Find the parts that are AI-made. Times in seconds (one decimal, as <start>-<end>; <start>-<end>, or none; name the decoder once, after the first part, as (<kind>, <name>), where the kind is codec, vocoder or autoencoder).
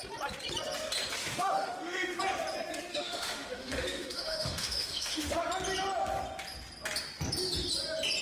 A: 1.2-2.2 (autoencoder, DAC-VAE); 2.9-5.4